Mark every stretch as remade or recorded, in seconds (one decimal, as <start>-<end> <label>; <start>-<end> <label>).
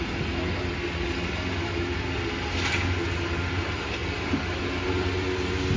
0.0-5.8 recorded